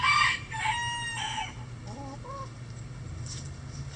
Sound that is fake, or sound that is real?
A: real